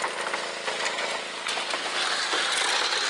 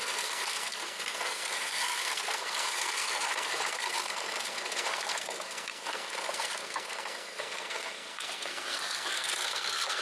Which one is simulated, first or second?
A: second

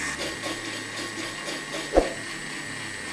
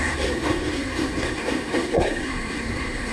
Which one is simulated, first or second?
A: second